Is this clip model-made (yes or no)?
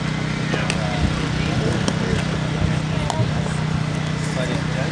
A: no